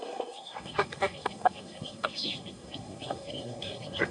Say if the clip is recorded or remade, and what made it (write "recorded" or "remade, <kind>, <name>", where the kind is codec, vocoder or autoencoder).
remade, codec, SNAC